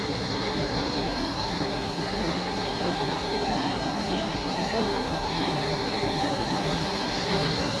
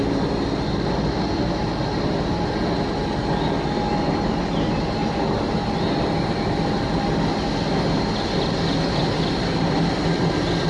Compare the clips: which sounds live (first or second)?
second